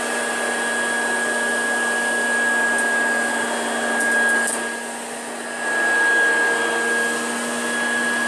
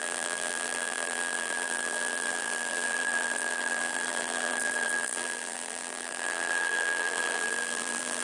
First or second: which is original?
first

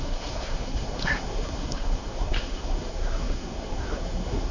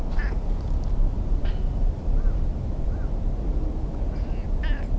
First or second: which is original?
second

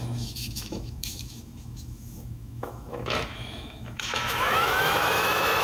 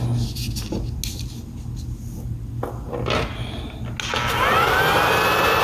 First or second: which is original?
second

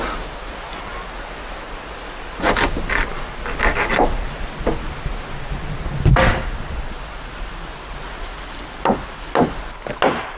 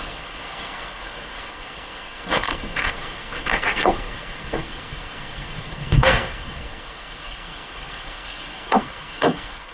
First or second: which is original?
first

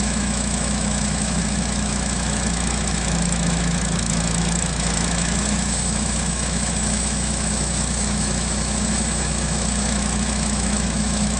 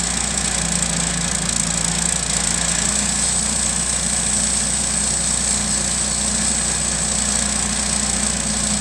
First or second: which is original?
second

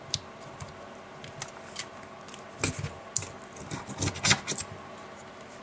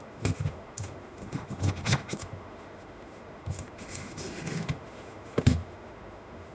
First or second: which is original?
first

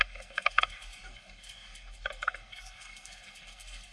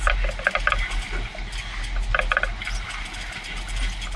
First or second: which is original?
second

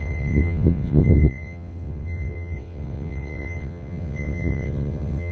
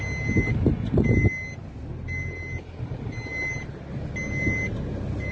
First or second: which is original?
second